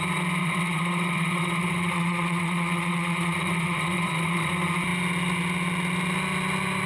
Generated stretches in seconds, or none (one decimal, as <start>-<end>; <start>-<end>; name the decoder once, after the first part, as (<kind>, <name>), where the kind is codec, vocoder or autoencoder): 0.4-4.5 (vocoder, WaveNeXt)